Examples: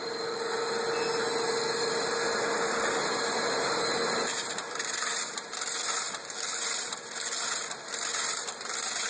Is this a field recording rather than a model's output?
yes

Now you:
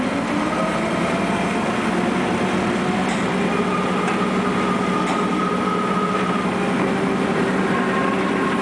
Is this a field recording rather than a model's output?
yes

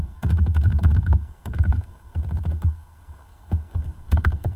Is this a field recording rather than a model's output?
no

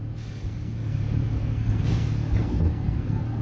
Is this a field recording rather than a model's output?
no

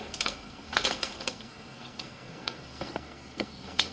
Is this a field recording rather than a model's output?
no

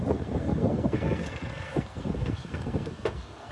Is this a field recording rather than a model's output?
no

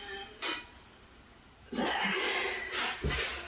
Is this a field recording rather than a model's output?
yes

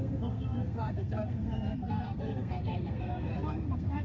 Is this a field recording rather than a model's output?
no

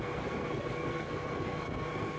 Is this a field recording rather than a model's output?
no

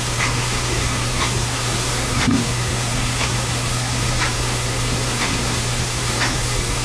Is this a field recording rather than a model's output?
no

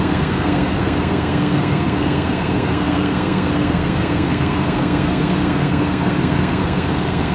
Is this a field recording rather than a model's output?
no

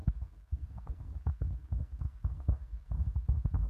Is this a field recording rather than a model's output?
no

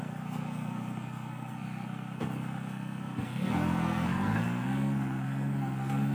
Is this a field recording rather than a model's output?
no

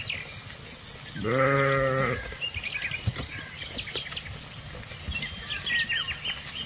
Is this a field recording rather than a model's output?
yes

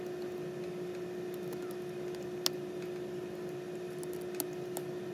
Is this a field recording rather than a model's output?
yes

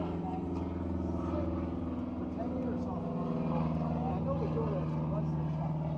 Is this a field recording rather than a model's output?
yes